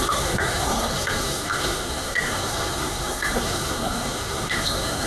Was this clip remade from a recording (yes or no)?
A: yes